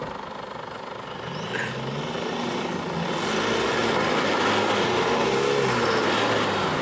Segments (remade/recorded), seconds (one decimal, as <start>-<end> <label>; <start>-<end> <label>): 0.0-6.8 recorded

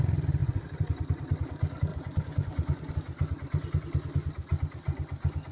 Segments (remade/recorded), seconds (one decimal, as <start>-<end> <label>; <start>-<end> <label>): 0.0-1.9 recorded; 1.9-2.9 remade; 2.9-5.5 recorded

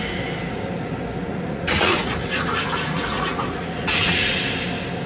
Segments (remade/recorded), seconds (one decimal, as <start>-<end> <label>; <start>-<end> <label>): 0.0-1.3 recorded; 1.3-4.4 remade; 4.4-5.1 recorded

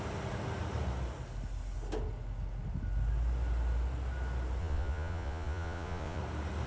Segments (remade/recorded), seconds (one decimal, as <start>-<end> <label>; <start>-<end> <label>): 0.0-4.6 recorded; 4.6-6.2 remade; 6.2-6.7 recorded